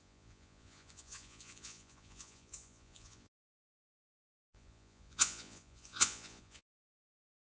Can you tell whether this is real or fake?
fake